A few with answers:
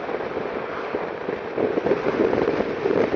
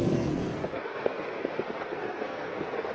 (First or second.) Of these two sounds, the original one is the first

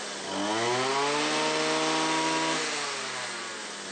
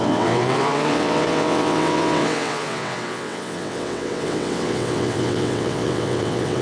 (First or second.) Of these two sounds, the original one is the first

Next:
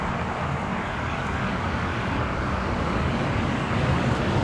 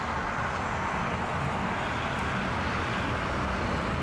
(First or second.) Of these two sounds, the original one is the second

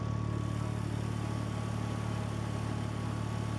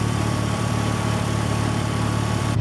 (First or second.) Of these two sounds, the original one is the first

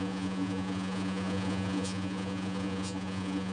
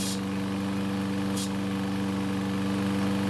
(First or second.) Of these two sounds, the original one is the second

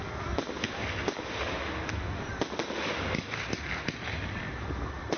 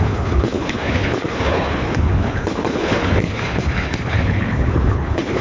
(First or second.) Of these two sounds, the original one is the first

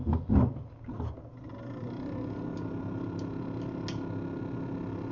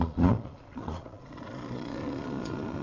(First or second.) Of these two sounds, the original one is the first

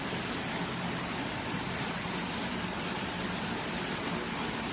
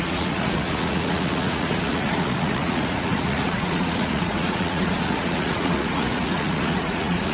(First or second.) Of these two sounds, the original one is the first